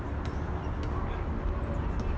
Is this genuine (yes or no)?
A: yes